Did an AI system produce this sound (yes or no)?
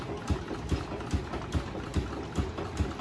no